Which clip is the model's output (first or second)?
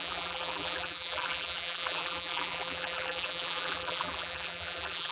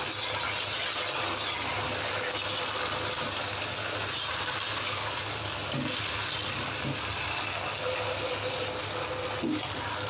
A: first